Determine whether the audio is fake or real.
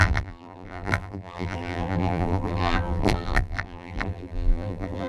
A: fake